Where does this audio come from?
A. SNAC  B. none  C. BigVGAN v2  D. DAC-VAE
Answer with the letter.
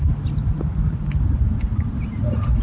B